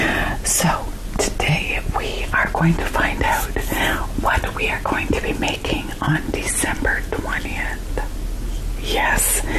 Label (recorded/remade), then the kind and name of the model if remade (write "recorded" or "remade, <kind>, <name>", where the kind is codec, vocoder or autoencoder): recorded